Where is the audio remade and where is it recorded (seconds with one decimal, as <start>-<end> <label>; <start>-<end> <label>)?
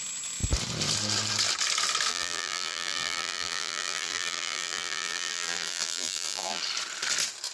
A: 0.0-2.1 recorded; 2.1-6.6 remade; 6.6-7.5 recorded